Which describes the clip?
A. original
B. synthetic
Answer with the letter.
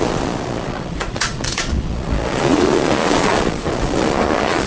B